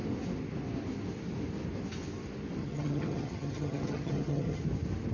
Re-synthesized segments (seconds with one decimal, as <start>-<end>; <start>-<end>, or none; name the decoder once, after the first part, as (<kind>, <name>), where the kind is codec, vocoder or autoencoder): 2.6-4.6 (vocoder, HiFi-GAN)